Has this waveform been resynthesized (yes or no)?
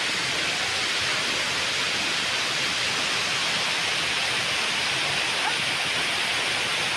no